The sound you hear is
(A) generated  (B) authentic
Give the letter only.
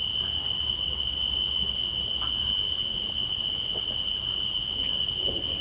B